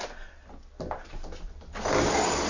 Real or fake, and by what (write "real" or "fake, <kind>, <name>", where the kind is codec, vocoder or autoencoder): real